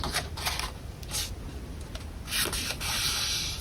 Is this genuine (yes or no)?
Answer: yes